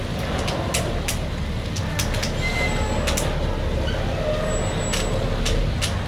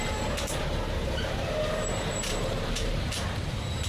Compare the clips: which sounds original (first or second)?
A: first